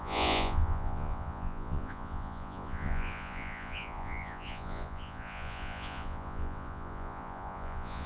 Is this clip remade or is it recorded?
remade